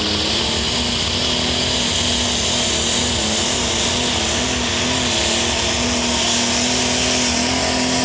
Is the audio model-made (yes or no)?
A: no